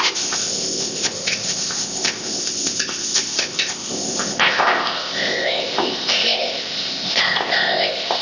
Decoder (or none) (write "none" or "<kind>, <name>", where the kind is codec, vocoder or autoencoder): codec, ZipCodec